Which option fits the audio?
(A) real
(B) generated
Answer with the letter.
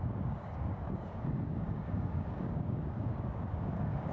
B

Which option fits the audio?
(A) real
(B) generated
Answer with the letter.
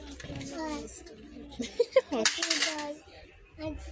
A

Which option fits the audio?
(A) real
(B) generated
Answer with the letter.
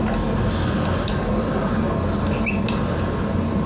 A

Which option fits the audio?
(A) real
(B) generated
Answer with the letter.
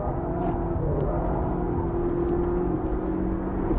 A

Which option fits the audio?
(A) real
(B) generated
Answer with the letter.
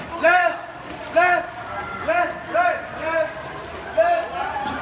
A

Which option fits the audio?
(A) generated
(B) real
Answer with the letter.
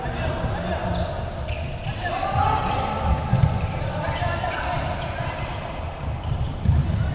B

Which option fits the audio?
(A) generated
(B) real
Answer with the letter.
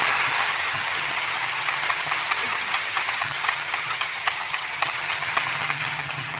A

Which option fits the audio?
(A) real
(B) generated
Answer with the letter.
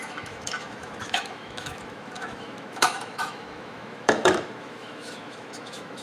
B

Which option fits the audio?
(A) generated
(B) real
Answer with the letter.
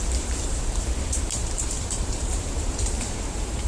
A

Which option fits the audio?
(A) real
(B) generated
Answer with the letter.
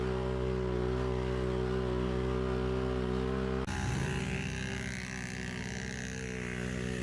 A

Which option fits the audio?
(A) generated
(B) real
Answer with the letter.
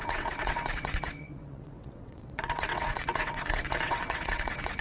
A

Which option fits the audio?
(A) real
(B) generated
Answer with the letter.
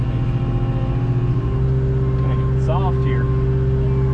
A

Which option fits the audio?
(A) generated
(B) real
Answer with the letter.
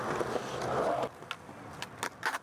B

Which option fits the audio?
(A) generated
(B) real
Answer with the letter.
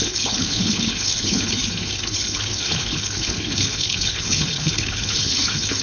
A